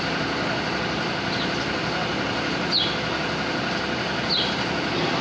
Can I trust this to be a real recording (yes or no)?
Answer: yes